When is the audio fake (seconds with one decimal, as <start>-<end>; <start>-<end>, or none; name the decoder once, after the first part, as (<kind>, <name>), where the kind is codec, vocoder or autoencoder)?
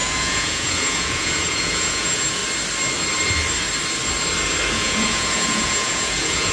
0.0-2.4 (vocoder, Vocos); 4.7-6.5